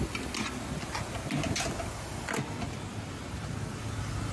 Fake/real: real